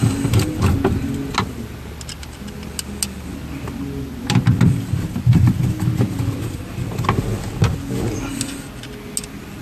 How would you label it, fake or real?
real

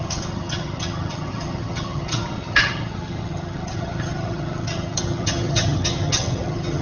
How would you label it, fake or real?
fake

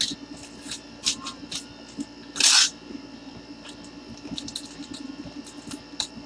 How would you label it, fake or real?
real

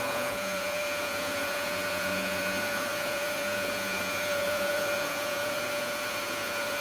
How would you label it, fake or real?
fake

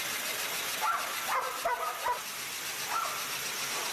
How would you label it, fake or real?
real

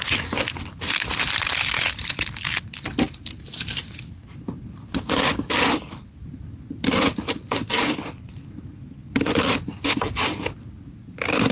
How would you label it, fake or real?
real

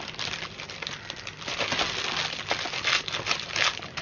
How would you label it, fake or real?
real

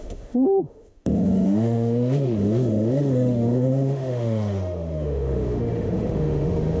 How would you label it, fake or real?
fake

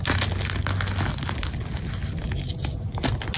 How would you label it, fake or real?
real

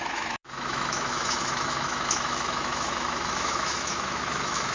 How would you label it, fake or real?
fake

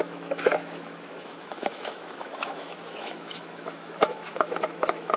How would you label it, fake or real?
fake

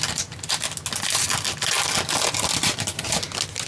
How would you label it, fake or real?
real